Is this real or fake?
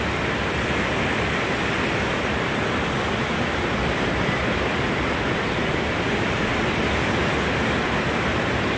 real